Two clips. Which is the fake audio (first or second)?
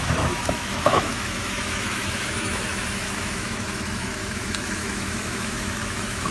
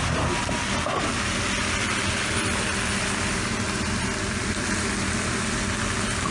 first